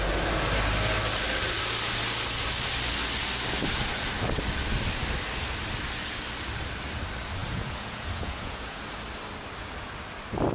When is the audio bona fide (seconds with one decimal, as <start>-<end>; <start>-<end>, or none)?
0.0-7.4; 8.8-10.5